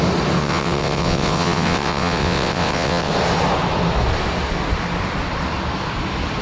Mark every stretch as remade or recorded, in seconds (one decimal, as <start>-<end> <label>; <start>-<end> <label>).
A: 0.0-0.4 recorded; 0.4-3.1 remade; 3.1-6.4 recorded